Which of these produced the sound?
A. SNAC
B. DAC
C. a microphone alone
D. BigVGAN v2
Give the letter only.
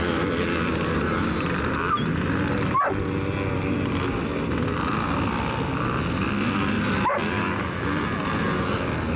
C